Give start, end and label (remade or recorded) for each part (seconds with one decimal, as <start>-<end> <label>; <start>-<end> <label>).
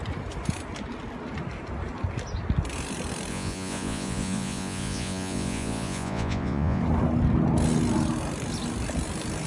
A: 0.0-3.3 recorded; 3.3-6.8 remade; 6.8-9.5 recorded